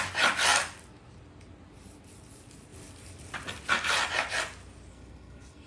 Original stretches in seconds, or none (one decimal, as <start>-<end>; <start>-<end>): 0.0-4.9